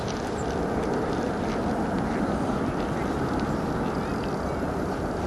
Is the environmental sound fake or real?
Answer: real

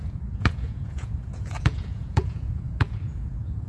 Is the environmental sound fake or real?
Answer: fake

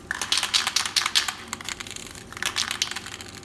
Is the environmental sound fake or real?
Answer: real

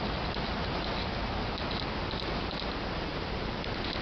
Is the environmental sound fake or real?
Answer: real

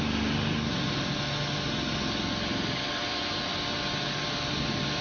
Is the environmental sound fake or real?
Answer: real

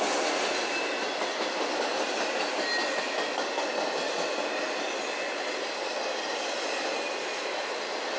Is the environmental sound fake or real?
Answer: real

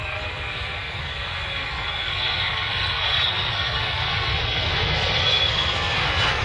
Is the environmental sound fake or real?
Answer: fake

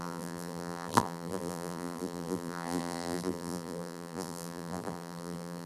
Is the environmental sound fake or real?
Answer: fake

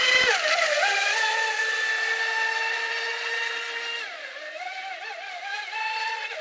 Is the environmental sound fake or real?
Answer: real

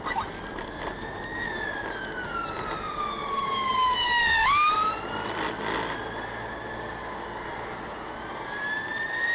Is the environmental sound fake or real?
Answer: real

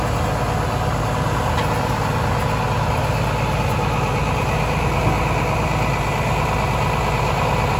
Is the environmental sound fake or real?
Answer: real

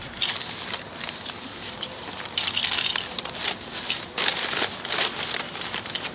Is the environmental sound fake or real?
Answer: fake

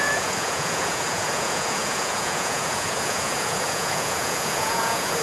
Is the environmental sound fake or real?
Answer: fake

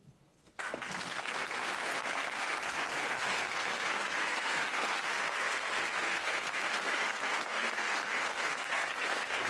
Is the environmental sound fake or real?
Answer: fake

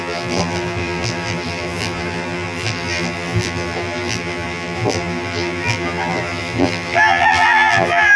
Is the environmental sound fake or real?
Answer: fake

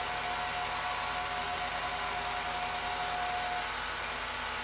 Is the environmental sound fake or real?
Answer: real